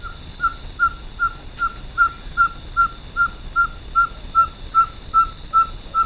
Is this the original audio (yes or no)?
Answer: yes